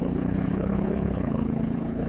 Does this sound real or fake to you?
fake